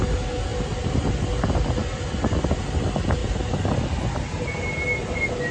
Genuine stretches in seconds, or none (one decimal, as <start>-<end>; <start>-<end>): 0.0-5.5